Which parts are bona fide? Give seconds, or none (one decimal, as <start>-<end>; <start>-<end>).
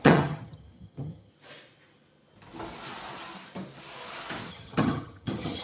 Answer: 1.3-4.5